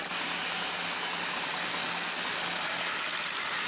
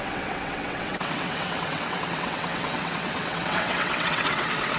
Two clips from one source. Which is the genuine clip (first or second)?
first